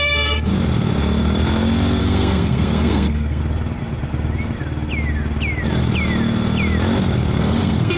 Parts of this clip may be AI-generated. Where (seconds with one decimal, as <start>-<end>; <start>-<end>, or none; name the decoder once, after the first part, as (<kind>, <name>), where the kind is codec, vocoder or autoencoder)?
0.0-0.5 (codec, SNAC); 2.0-3.4; 7.4-8.0